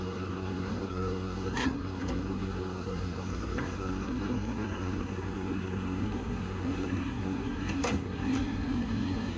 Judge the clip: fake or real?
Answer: fake